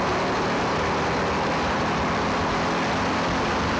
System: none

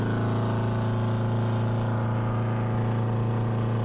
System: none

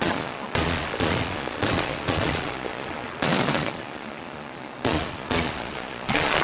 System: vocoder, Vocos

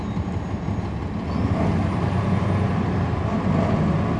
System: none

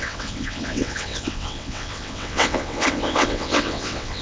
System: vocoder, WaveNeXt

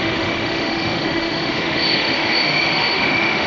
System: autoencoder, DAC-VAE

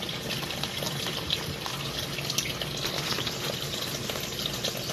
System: none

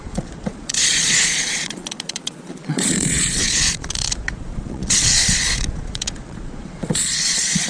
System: vocoder, Vocos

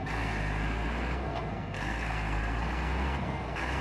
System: codec, SNAC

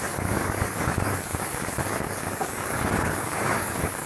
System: codec, DAC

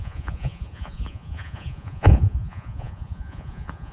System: vocoder, Vocos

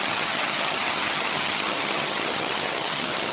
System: vocoder, HiFi-GAN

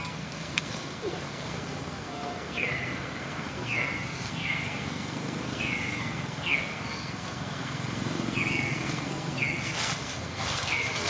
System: codec, SNAC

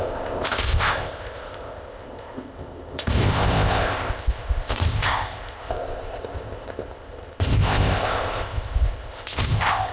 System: codec, ZipCodec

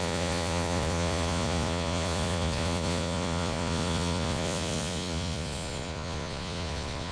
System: vocoder, Vocos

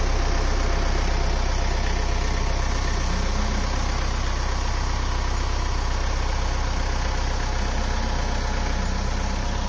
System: none